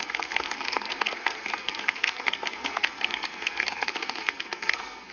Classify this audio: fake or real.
fake